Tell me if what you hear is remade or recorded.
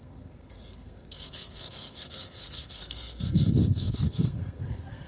remade